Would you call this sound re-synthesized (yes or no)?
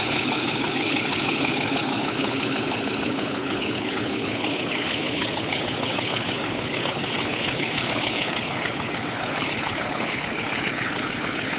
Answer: yes